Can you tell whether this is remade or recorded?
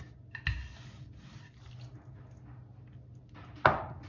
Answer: recorded